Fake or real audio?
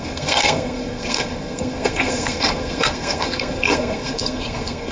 fake